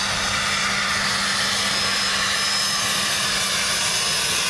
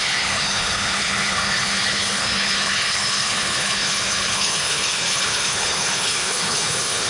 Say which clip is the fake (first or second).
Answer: second